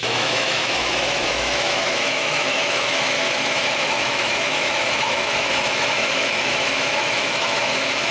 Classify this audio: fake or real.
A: fake